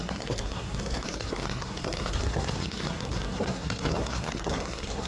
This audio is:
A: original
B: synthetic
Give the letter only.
B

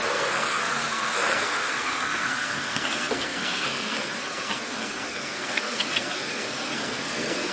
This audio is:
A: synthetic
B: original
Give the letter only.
A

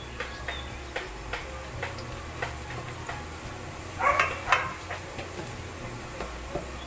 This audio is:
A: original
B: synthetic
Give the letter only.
A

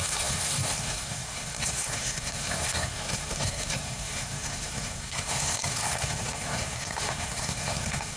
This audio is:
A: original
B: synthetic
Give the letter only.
B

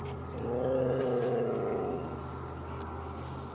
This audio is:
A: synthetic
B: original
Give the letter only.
B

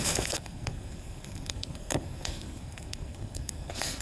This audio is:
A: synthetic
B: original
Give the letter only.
A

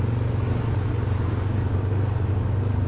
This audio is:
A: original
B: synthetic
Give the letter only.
A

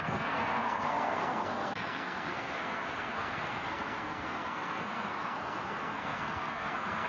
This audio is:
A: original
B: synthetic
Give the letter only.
B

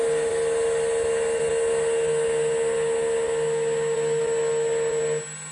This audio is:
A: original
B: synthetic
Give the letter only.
A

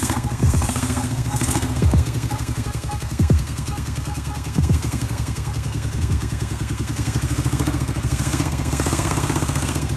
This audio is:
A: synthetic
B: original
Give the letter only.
A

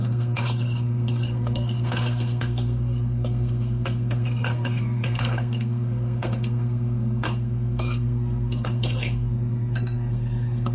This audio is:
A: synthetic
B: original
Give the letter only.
A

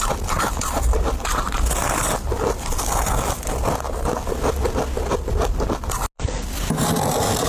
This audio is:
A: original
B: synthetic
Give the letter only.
A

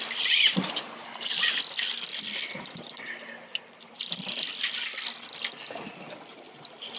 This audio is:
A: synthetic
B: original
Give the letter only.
B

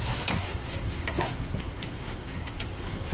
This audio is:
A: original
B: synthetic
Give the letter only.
B